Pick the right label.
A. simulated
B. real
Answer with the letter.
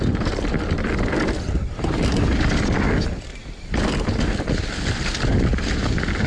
B